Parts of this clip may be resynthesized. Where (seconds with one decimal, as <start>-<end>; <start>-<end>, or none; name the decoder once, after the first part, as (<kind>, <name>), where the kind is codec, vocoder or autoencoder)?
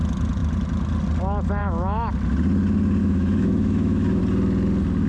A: 1.6-2.1 (autoencoder, DAC-VAE); 3.0-4.2